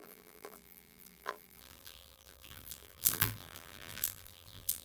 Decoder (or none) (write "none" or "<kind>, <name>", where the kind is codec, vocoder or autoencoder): vocoder, BigVGAN v2